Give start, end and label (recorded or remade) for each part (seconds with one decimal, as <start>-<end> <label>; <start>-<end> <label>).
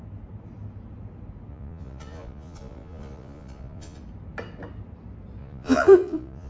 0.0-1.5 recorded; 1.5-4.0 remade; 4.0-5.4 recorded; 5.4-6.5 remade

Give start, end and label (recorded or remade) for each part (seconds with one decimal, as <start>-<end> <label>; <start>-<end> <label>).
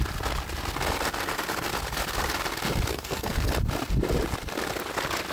0.0-2.9 recorded; 2.9-3.5 remade; 3.5-5.3 recorded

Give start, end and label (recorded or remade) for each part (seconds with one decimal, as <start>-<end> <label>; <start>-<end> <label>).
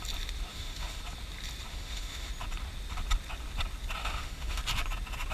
0.0-0.5 recorded; 0.5-1.0 remade; 1.0-1.7 recorded; 1.7-2.3 remade; 2.3-4.0 recorded; 4.0-4.6 remade; 4.6-5.3 recorded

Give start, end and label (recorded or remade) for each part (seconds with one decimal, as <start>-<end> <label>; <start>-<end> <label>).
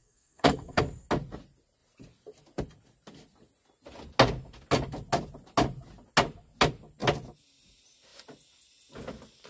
0.0-0.8 remade; 0.8-9.5 recorded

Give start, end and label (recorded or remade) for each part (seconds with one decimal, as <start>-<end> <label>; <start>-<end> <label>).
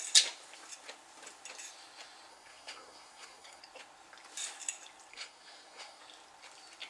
0.0-2.3 recorded; 2.3-3.6 remade; 3.6-5.1 recorded; 5.1-6.0 remade; 6.0-6.9 recorded